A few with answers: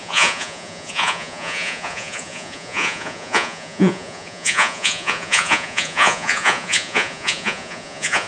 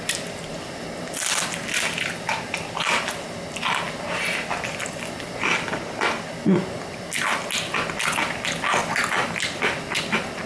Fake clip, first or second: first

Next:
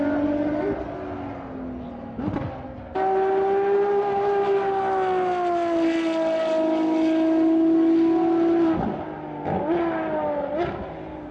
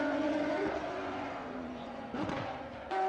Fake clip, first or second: second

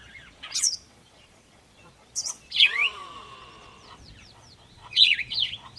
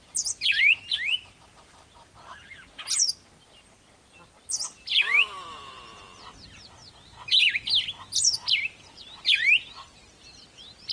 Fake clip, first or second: first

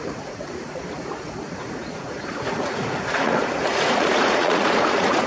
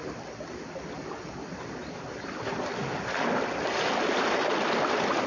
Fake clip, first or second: first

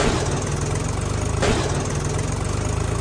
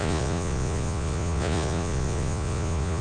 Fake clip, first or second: second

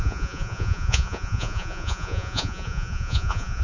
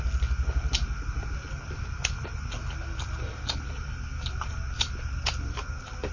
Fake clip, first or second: first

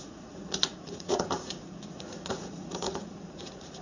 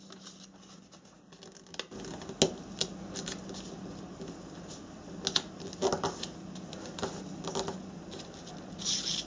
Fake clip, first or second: first